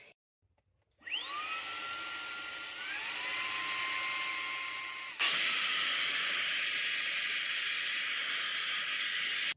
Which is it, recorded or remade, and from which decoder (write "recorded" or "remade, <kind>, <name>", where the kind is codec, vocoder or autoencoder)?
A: recorded